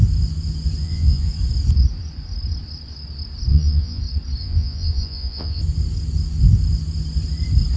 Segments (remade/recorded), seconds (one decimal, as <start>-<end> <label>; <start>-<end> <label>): 0.0-0.8 recorded; 0.8-1.3 remade; 1.3-3.5 recorded; 3.5-4.0 remade; 4.0-4.4 recorded; 4.4-5.6 remade; 5.6-7.8 recorded